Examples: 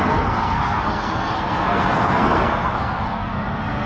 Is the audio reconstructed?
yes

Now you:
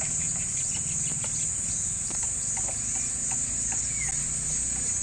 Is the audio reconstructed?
no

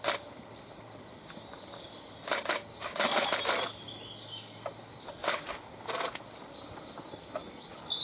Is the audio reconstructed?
no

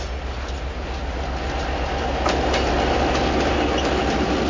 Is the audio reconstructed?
no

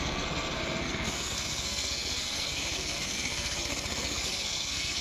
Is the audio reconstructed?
yes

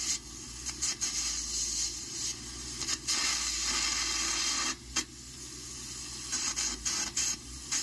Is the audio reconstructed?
no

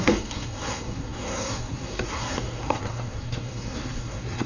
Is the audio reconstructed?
yes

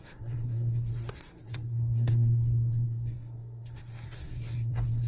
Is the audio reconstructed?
yes